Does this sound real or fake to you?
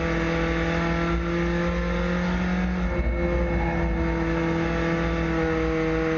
real